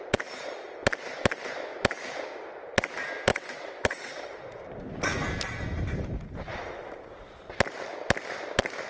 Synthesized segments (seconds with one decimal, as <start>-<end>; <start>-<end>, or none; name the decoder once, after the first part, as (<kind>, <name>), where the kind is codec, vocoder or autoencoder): 3.3-4.3 (vocoder, WaveNeXt)

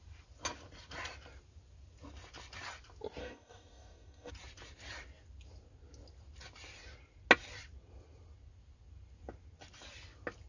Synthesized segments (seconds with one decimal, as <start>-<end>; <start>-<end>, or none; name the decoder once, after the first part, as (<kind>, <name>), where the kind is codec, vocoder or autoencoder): 3.2-4.3 (codec, DAC)